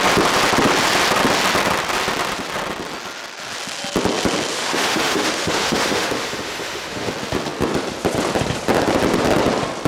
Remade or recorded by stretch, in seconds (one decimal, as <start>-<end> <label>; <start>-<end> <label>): 0.0-4.5 recorded; 4.5-7.1 remade; 7.1-9.9 recorded